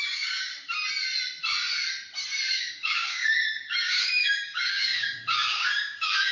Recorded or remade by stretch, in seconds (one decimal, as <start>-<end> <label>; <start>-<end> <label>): 0.0-0.5 remade; 0.5-2.5 recorded; 2.5-6.3 remade